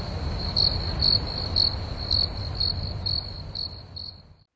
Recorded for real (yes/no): yes